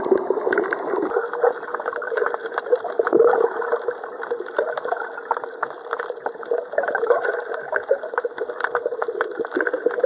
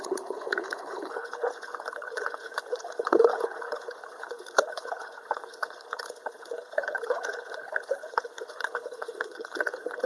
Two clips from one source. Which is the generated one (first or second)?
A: second